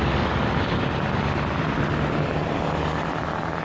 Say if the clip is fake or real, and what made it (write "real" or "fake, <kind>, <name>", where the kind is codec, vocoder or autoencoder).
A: real